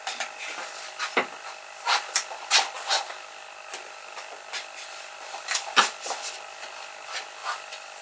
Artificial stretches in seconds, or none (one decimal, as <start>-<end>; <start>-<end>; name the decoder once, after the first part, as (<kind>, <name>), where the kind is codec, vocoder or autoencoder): 7.4-8.0 (vocoder, BigVGAN v2)